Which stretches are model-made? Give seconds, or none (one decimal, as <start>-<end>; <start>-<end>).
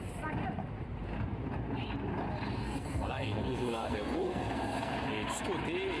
2.6-5.4